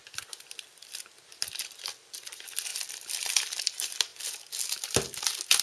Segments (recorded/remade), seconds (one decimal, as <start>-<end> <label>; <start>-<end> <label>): 0.0-1.0 remade; 1.0-2.7 recorded; 2.7-3.6 remade; 3.6-5.6 recorded